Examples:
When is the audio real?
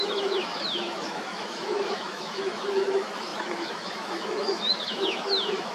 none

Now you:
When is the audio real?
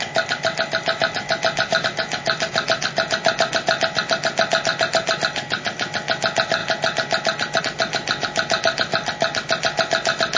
0.0-10.4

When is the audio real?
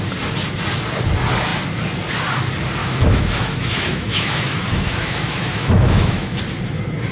0.0-2.8; 6.4-7.1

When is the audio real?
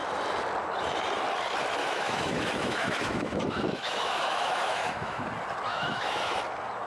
0.0-1.8; 5.2-5.7; 6.4-6.9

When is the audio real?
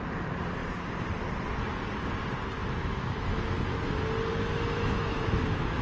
0.0-2.6; 3.8-4.3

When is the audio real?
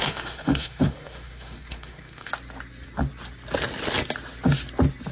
2.3-5.1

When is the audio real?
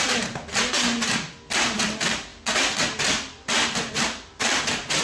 0.0-5.0